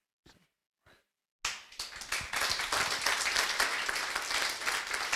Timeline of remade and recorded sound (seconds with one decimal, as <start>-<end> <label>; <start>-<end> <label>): 0.0-5.2 recorded